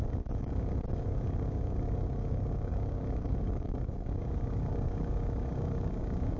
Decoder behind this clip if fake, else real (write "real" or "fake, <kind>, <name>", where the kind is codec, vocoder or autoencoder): fake, codec, DAC